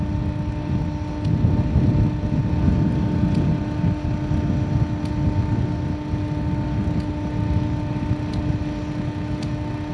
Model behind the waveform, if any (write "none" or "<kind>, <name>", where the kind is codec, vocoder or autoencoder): none